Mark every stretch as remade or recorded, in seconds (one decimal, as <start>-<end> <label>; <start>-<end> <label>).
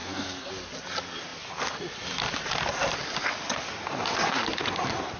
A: 0.0-0.5 remade; 0.5-5.2 recorded